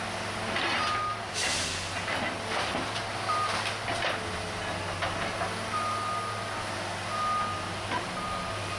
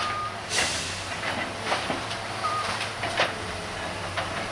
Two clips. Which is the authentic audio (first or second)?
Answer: first